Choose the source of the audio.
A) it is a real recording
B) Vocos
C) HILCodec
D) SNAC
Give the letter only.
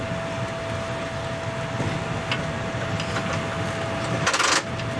A